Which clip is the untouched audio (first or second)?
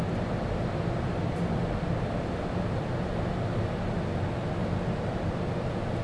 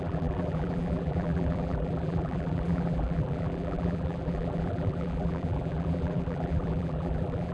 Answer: first